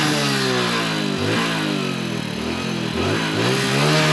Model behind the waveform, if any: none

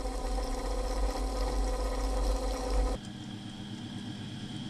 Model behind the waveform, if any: none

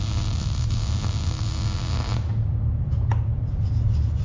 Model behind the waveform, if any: none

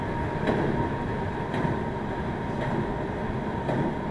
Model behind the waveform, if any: none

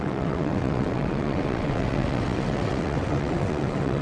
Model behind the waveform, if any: vocoder, WaveNeXt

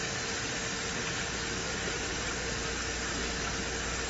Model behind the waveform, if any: none